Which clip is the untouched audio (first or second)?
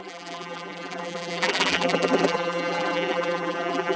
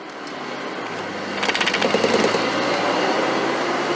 second